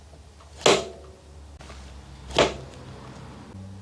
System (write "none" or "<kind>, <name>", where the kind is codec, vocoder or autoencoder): none